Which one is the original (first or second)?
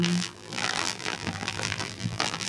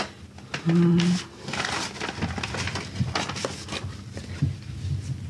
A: second